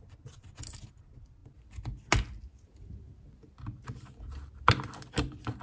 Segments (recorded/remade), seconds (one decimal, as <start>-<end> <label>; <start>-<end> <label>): 0.0-5.6 recorded